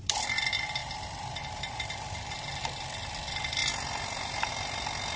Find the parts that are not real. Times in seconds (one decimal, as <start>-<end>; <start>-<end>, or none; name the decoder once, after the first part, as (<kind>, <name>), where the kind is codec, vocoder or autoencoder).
none